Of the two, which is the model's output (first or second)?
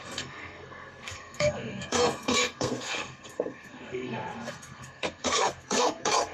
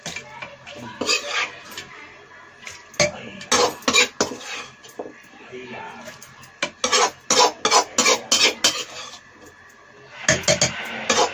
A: first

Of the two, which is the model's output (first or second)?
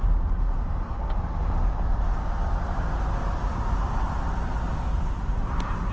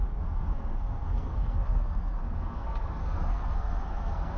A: second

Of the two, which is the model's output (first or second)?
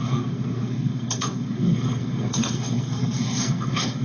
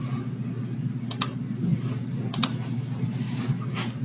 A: first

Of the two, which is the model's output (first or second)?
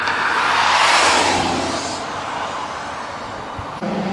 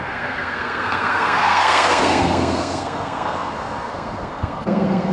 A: second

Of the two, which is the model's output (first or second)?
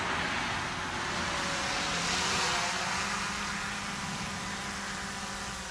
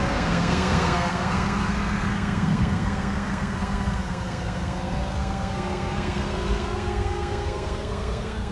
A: second